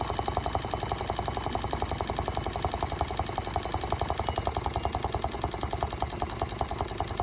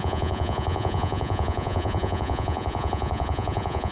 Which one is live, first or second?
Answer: first